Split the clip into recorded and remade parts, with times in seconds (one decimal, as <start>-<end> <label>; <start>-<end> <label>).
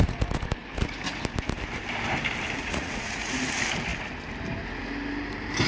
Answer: 0.0-2.6 recorded; 2.6-3.4 remade; 3.4-5.7 recorded